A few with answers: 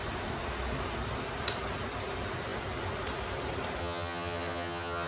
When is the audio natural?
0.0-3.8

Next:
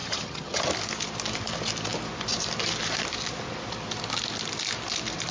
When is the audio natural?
0.6-5.3